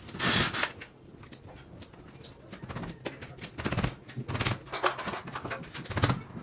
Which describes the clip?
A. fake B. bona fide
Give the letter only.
B